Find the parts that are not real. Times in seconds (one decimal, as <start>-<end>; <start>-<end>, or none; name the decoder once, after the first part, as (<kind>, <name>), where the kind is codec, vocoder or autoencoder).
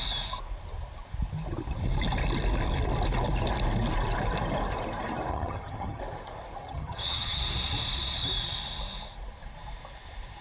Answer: 5.3-6.0 (vocoder, HiFi-GAN); 6.6-7.4